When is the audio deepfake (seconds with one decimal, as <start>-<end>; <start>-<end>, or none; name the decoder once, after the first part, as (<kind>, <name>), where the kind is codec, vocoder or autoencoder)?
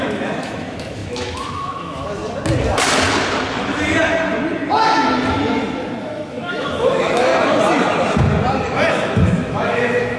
0.0-2.2 (autoencoder, DAC-VAE); 6.0-7.3; 8.9-10.2